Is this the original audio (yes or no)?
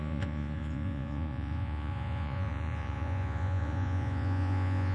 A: no